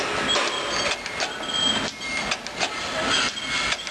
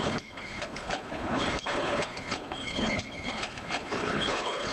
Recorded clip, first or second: first